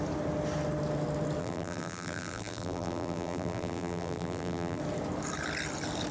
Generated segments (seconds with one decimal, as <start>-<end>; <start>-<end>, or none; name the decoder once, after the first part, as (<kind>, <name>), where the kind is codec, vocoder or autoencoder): 1.4-4.8 (vocoder, BigVGAN v2)